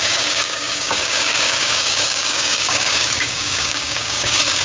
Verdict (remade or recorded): remade